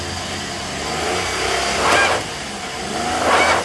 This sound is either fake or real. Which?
real